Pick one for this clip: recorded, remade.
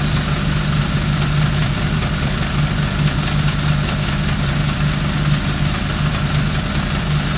recorded